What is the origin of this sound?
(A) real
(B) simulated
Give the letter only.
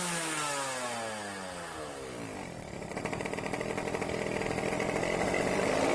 A